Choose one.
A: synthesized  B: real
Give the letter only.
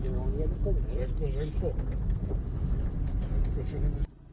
B